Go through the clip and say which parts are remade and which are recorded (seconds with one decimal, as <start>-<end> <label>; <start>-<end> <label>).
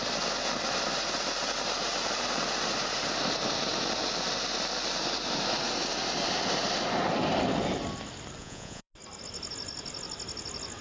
0.0-8.4 recorded; 8.4-8.9 remade; 8.9-10.8 recorded